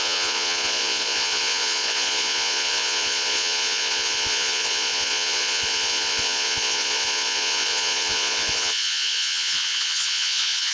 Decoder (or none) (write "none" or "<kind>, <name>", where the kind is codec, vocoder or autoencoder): vocoder, Vocos